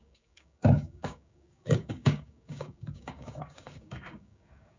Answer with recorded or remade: remade